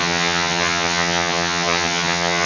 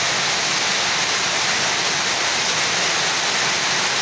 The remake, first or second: first